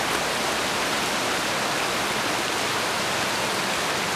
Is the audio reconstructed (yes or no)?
no